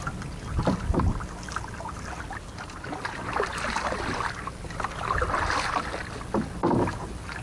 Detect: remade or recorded recorded